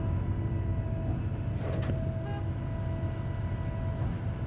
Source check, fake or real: real